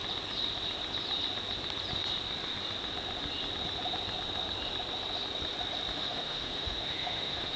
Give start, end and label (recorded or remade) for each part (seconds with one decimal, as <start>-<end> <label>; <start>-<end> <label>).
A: 0.0-5.9 recorded; 5.9-7.6 remade